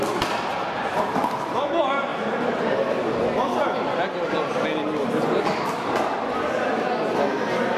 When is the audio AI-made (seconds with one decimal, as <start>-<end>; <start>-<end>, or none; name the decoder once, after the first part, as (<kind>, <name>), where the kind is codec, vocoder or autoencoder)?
0.5-1.6 (vocoder, BigVGAN v2)